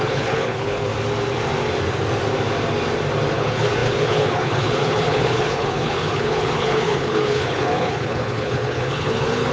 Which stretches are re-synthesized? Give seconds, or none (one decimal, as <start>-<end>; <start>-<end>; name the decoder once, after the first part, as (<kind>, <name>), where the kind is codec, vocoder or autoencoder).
0.0-0.9 (codec, HILCodec); 3.3-9.5